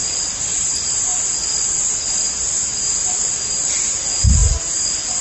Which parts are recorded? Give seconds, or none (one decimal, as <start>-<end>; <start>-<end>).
0.7-1.1; 2.3-5.2